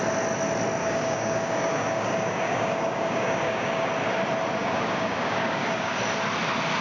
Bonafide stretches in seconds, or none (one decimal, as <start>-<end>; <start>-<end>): 0.0-0.8; 3.9-4.6; 6.0-6.8